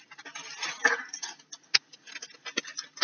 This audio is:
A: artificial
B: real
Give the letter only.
B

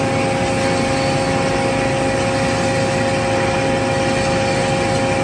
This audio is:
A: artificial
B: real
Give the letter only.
B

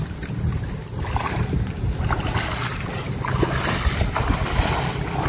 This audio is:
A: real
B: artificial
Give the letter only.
A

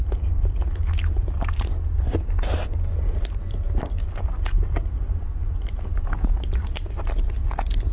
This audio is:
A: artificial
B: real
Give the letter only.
A